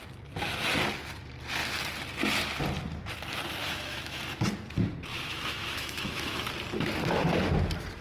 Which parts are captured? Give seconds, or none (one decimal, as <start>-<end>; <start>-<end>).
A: 0.0-3.6; 4.2-5.1; 6.5-8.0